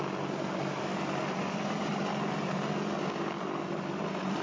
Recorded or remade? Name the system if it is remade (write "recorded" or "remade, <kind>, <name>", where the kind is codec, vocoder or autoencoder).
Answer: recorded